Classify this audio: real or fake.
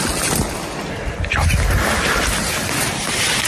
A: real